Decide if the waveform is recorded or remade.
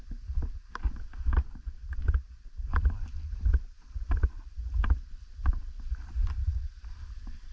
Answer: recorded